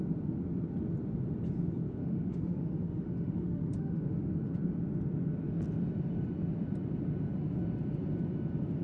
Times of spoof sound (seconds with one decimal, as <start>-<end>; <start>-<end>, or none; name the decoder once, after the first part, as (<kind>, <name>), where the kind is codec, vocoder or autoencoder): 2.0-4.3 (autoencoder, DAC-VAE)